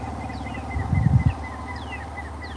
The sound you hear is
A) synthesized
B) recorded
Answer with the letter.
B